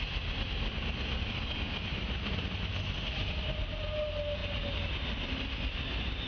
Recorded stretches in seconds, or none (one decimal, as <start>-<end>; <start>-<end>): 0.0-6.3